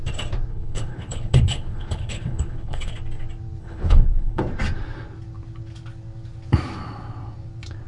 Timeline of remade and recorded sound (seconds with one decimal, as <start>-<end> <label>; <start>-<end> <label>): 0.0-0.5 recorded; 0.5-2.9 remade; 2.9-3.6 recorded; 3.6-4.4 remade; 4.4-7.9 recorded